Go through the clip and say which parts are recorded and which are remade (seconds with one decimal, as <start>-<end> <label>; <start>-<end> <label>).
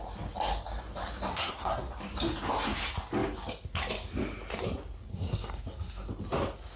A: 0.0-1.3 recorded; 1.3-1.9 remade; 1.9-5.1 recorded; 5.1-6.1 remade; 6.1-6.8 recorded